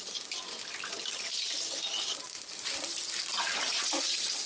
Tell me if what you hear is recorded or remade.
recorded